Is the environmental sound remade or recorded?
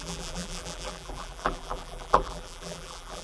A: remade